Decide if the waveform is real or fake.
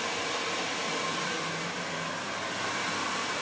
real